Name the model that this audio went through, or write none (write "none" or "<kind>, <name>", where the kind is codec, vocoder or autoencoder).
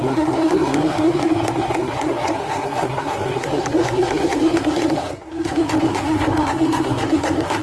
codec, SNAC